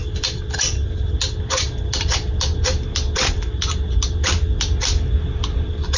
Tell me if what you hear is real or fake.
real